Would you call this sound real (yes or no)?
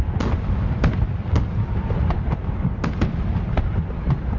yes